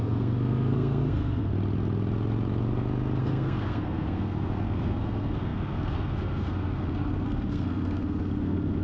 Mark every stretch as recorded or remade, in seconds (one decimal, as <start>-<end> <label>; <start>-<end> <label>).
0.0-1.5 remade; 1.5-3.2 recorded; 3.2-8.8 remade